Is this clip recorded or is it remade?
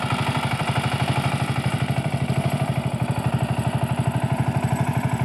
remade